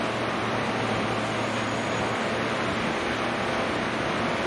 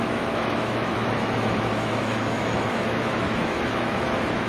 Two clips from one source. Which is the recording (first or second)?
first